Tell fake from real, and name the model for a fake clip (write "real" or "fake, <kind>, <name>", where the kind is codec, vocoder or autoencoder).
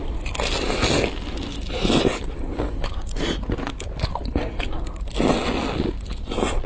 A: real